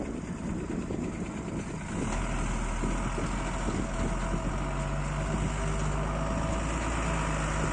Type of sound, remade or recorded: recorded